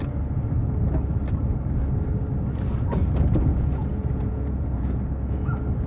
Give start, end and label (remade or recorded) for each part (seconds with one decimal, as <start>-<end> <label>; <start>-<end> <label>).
0.0-3.5 recorded; 3.5-5.0 remade; 5.0-5.9 recorded